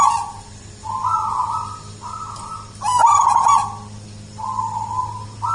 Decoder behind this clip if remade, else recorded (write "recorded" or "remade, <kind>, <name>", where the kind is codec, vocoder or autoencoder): recorded